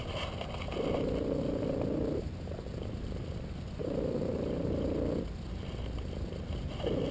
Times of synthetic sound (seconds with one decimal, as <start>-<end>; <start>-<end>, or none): none